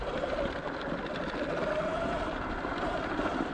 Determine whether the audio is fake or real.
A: real